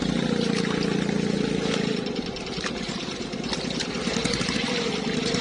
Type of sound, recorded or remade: recorded